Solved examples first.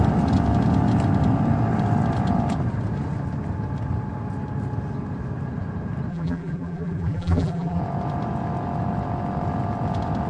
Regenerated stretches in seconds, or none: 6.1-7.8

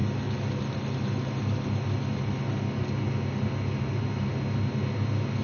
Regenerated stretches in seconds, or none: none

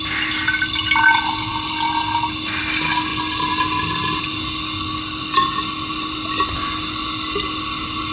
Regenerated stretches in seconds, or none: 1.5-2.6; 3.1-4.2

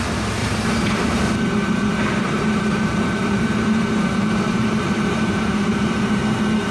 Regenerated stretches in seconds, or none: 0.4-1.2; 2.2-6.2

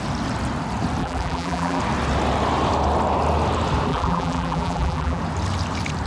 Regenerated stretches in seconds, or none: 1.0-1.8; 3.9-5.2

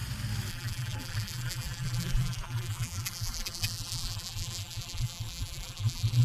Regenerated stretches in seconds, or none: 0.5-6.2